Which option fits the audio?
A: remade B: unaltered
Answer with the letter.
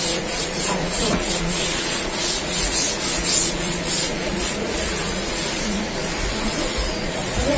A